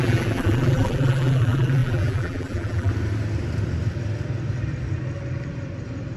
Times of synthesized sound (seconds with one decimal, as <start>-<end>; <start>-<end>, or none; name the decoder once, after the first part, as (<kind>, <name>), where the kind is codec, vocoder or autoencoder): 0.0-2.9 (vocoder, BigVGAN v2)